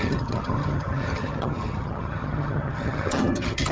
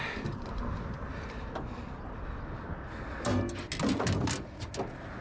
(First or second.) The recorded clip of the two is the second